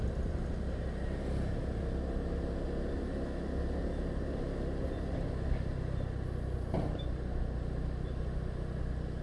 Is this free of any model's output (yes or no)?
yes